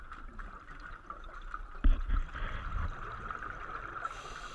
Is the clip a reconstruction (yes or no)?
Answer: no